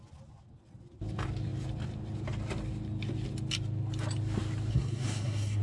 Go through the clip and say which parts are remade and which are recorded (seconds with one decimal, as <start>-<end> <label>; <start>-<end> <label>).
0.0-4.7 recorded; 4.7-5.6 remade

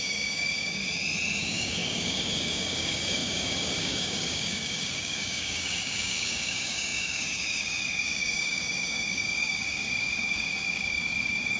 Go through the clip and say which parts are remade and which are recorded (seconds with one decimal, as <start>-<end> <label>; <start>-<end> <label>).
0.0-0.8 remade; 0.8-1.4 recorded; 1.4-11.6 remade